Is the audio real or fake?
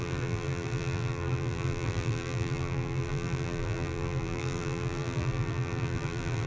fake